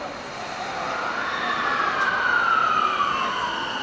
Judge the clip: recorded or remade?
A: recorded